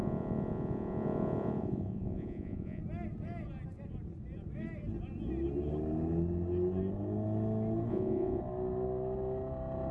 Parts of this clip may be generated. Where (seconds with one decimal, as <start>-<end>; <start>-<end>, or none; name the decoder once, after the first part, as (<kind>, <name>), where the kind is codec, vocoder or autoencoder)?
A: 0.0-2.8 (vocoder, Vocos); 7.9-8.4